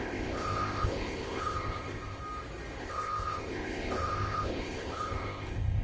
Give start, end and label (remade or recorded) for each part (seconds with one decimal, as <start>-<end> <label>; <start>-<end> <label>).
0.0-2.2 remade; 2.2-2.8 recorded; 2.8-5.8 remade